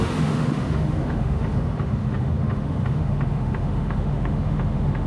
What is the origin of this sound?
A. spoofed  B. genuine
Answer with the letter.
A